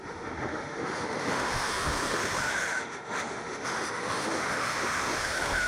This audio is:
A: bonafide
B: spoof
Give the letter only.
B